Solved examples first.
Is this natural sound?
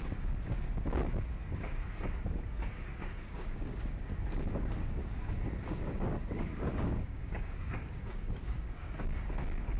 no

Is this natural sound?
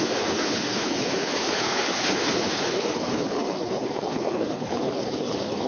no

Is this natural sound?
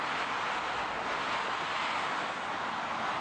yes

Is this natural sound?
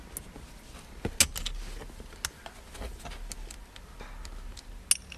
yes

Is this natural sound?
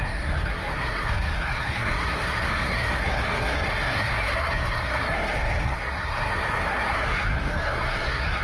no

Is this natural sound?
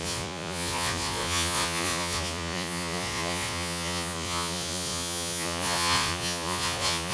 no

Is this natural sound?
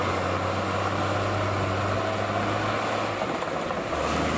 yes